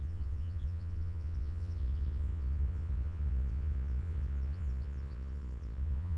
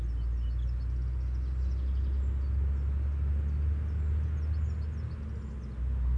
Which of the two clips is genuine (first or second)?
second